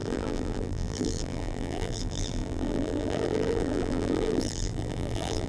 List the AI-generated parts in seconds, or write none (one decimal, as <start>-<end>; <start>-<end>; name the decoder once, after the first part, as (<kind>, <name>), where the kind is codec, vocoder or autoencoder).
0.0-5.5 (vocoder, BigVGAN v2)